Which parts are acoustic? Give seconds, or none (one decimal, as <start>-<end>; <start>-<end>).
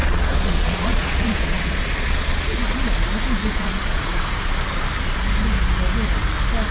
2.6-3.4; 4.0-6.7